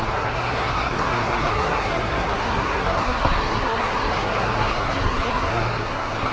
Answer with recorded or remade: remade